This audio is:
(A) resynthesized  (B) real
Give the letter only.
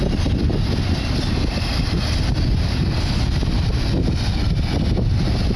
B